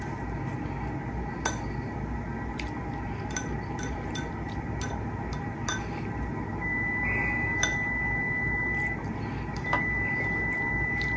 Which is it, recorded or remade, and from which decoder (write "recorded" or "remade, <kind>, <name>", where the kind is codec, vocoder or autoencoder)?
recorded